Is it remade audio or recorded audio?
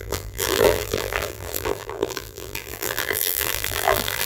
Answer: remade